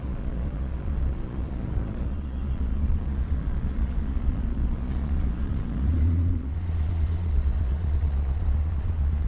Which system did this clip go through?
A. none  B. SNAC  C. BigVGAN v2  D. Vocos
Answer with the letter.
D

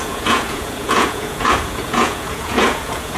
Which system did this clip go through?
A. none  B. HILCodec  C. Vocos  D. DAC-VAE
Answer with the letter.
C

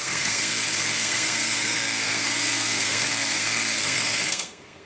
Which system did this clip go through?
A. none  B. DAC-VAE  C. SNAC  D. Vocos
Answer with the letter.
C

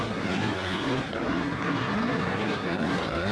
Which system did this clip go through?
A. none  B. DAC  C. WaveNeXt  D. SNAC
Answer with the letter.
D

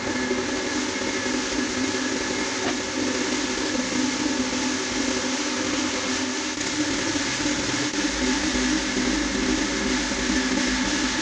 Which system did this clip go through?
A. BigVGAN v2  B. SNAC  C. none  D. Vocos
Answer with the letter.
C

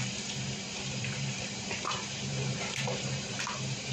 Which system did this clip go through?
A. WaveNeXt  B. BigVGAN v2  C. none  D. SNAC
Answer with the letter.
B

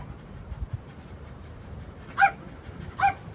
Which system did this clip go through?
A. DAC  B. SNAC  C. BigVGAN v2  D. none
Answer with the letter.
C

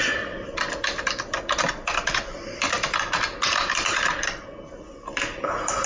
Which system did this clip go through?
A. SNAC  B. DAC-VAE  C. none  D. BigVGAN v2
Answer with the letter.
D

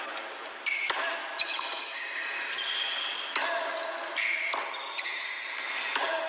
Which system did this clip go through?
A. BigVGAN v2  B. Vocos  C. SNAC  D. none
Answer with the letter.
D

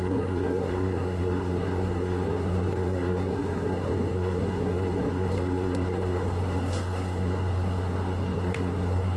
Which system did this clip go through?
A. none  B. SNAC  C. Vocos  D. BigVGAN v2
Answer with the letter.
B